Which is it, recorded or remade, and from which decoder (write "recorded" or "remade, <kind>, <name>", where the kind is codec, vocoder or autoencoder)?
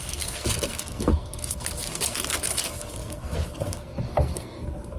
remade, codec, SNAC